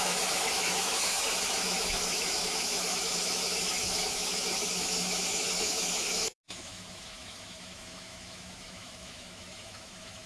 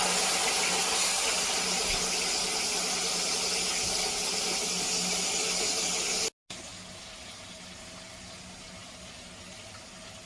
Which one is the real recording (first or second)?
second